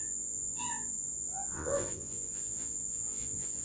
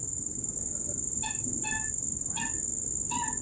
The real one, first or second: second